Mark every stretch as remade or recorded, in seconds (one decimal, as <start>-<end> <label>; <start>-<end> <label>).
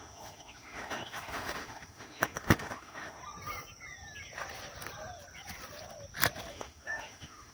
0.0-3.2 remade; 3.2-6.5 recorded; 6.5-7.5 remade